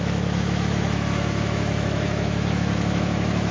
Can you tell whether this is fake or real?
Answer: fake